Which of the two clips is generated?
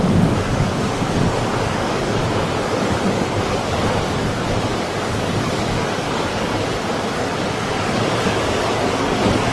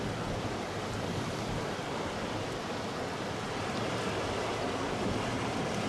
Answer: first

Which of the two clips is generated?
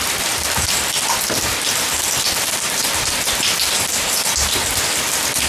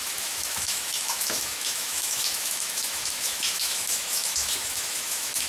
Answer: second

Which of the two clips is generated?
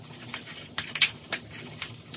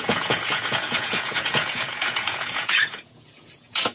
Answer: second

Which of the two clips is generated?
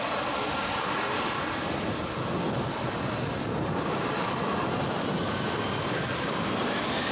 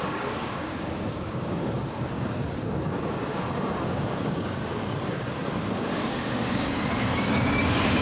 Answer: second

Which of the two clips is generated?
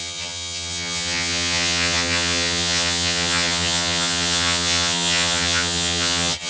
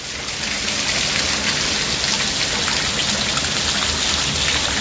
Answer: first